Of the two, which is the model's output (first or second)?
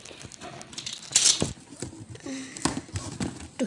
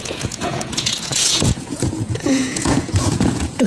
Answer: second